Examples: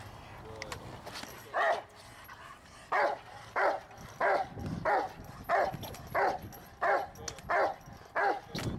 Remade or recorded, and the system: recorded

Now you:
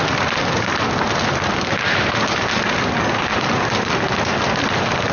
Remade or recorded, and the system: recorded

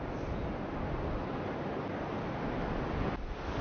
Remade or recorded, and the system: recorded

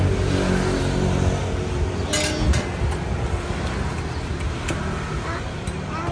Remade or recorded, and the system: recorded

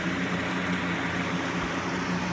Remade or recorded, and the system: recorded